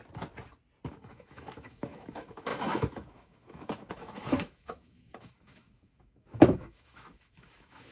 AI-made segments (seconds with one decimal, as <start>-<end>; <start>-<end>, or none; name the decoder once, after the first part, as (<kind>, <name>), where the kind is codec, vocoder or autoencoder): 0.9-7.9 (autoencoder, DAC-VAE)